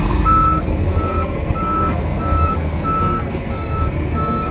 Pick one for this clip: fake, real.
fake